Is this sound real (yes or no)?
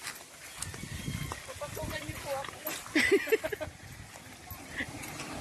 yes